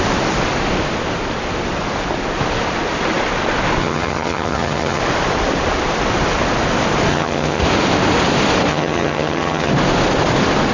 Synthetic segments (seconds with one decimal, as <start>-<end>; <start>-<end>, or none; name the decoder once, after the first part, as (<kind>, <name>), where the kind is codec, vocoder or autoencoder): 3.8-5.0 (vocoder, HiFi-GAN); 7.1-7.6; 8.7-9.7